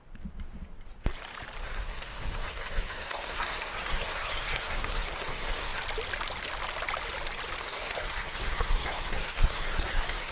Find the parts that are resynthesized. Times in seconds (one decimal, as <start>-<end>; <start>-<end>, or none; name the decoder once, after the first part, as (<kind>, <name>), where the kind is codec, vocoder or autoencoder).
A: 1.6-5.8 (codec, SNAC); 7.6-10.3